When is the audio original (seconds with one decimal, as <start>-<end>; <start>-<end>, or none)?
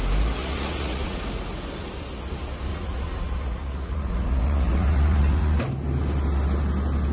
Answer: 0.0-0.4; 1.2-2.7; 5.6-7.1